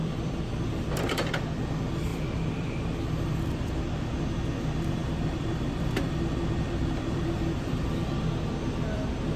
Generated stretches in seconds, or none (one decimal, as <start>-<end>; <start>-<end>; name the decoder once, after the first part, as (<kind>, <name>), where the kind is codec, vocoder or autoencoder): 0.0-1.3 (vocoder, BigVGAN v2); 2.1-3.8; 5.0-7.8